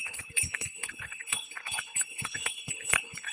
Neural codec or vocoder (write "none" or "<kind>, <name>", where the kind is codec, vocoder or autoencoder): codec, HILCodec